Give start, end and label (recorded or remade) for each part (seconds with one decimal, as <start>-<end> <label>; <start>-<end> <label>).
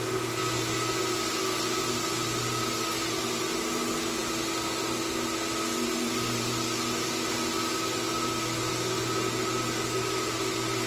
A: 0.0-10.9 recorded